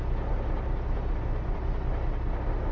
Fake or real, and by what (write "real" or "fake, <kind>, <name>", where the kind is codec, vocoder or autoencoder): fake, vocoder, BigVGAN v2